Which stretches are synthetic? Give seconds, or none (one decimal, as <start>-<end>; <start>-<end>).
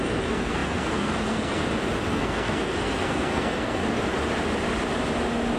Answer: 0.0-1.6; 2.1-3.8